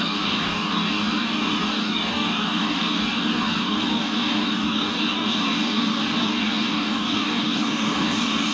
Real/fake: fake